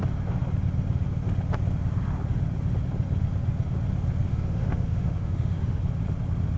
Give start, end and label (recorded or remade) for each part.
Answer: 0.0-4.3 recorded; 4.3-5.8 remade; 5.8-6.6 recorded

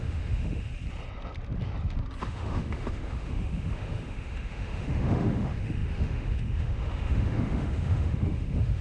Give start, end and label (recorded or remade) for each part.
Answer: 0.0-0.7 remade; 0.7-2.2 recorded; 2.2-8.8 remade

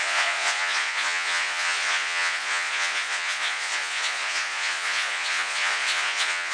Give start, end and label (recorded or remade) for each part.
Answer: 0.0-6.5 remade

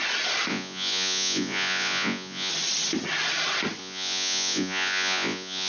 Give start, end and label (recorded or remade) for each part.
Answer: 0.0-0.5 recorded; 0.5-2.5 remade; 2.5-3.8 recorded; 3.8-5.7 remade